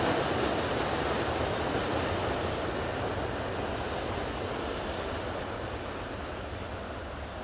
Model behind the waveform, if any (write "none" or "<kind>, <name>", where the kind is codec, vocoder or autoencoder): none